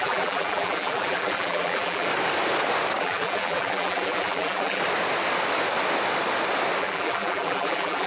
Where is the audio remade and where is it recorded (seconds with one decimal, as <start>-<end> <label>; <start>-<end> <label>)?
0.0-2.1 remade; 2.1-3.0 recorded; 3.0-4.8 remade; 4.8-6.8 recorded; 6.8-8.1 remade